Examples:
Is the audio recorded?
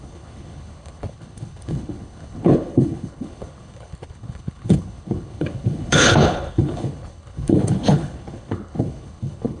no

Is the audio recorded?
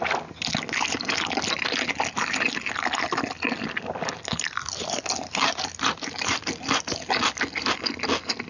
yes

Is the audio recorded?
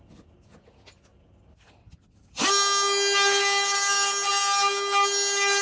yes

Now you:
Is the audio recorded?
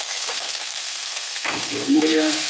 no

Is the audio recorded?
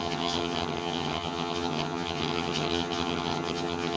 no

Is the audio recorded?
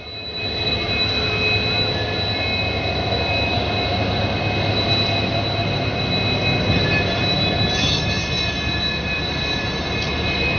yes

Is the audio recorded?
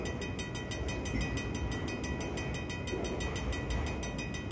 yes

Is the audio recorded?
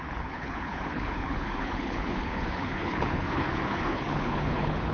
no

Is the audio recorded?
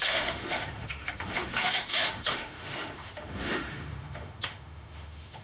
no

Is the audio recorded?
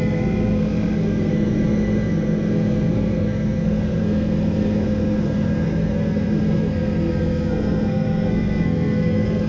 no